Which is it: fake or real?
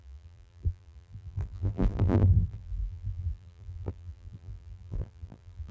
fake